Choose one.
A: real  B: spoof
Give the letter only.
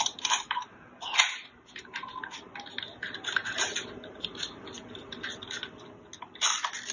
A